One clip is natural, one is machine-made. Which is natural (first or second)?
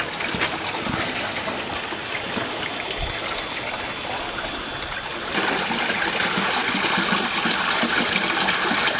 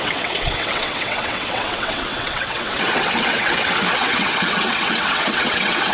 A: first